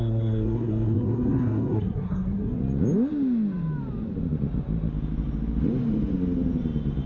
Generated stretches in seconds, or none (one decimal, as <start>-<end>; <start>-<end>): 0.0-2.6